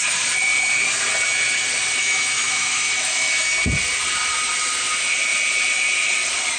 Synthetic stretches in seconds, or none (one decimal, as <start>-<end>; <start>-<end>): 2.0-3.5